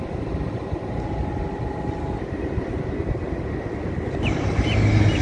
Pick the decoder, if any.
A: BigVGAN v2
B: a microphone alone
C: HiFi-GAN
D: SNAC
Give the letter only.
B